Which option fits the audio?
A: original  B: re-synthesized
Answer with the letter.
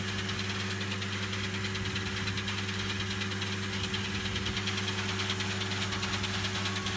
A